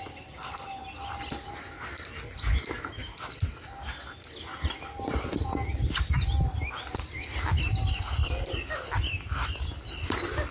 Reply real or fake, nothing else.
real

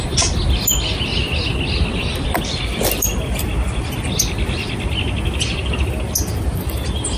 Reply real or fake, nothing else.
real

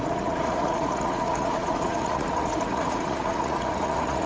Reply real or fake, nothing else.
fake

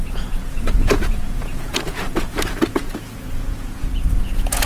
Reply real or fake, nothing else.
fake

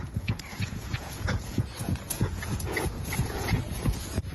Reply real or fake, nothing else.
fake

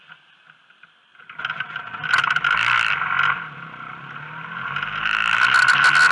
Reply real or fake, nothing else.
real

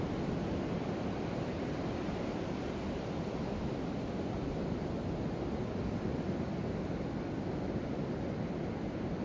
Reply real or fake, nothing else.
real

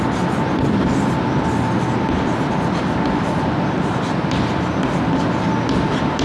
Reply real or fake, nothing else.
real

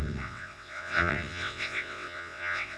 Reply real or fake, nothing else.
fake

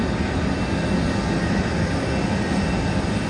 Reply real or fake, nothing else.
real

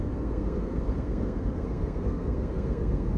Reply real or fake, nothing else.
fake